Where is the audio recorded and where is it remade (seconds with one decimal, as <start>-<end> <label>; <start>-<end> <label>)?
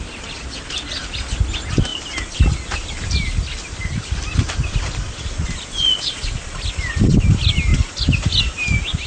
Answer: 0.0-5.7 recorded; 5.7-6.6 remade; 6.6-9.1 recorded